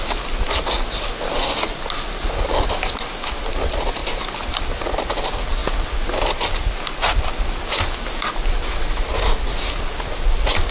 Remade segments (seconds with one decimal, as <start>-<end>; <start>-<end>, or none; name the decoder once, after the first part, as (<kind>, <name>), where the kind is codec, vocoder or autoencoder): none